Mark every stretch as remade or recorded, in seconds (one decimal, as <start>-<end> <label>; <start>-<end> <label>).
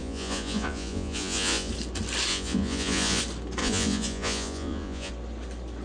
0.0-1.7 remade; 1.7-2.3 recorded; 2.3-3.2 remade; 3.2-3.6 recorded; 3.6-5.1 remade; 5.1-5.8 recorded